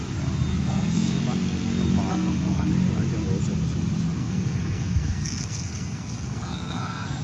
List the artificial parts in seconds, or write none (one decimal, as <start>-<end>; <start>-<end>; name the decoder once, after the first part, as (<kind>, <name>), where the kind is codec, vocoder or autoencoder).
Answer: 0.5-1.2 (codec, SNAC); 2.1-2.7; 4.2-7.2